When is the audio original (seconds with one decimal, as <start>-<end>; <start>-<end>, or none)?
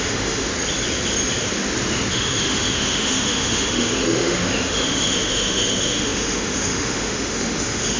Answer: 0.5-2.1